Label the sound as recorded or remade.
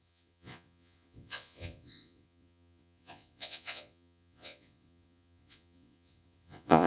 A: remade